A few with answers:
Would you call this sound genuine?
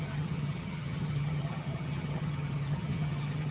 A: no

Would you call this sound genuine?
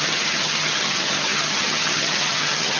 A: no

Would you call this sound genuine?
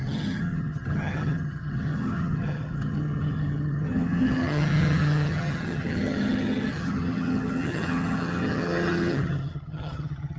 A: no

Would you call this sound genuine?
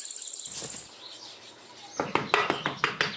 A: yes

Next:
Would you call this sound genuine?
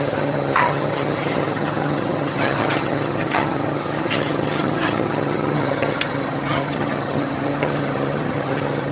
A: no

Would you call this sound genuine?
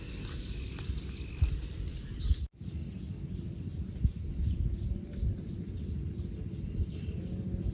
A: yes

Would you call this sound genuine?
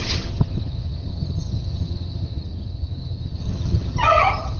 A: no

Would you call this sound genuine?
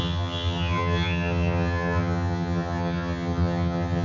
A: no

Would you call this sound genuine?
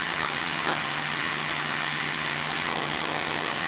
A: no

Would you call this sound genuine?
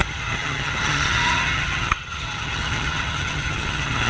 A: no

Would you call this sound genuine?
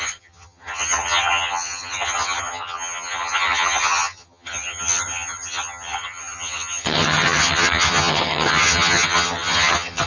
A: no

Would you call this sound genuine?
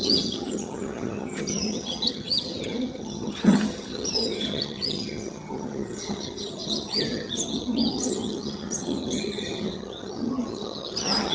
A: no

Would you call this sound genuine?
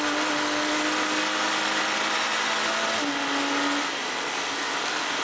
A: yes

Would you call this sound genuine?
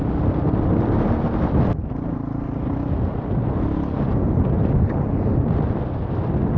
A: yes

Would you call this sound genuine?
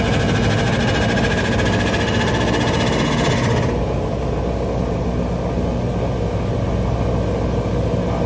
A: yes